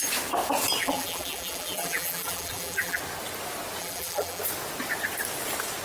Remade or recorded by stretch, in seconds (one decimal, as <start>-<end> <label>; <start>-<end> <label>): 0.0-0.8 recorded; 0.8-3.0 remade; 3.0-3.8 recorded; 3.8-4.4 remade; 4.4-5.8 recorded